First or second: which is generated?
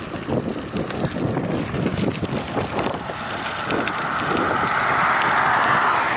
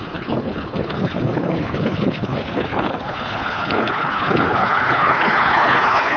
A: second